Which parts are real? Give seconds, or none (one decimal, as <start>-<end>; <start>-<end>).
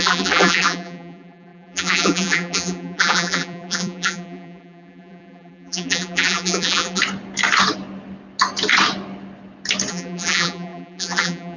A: 7.0-9.9